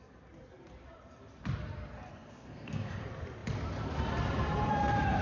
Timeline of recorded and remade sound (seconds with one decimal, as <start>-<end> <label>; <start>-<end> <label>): 0.0-2.1 recorded; 2.1-3.0 remade; 3.0-5.2 recorded